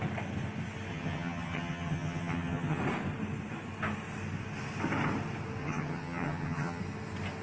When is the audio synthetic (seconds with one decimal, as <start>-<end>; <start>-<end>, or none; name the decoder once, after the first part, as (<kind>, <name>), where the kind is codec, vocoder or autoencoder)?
0.9-2.8 (vocoder, HiFi-GAN); 5.6-6.8